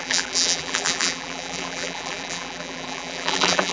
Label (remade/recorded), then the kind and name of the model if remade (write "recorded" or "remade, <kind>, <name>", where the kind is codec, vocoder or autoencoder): remade, vocoder, BigVGAN v2